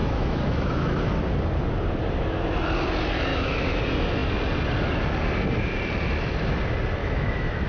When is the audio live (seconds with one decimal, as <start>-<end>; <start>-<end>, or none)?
1.1-3.3; 3.8-7.0